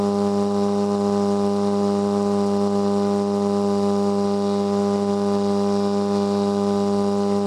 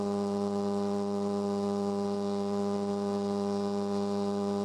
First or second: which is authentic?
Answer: first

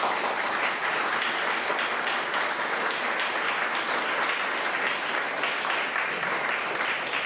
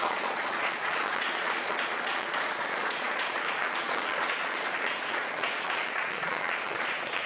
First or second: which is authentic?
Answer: first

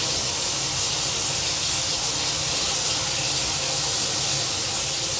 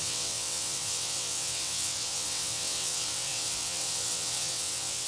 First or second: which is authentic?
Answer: first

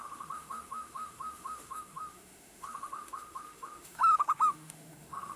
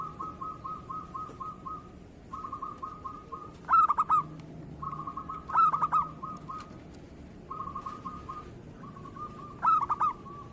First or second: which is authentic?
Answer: second